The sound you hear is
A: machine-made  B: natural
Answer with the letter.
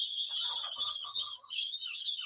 A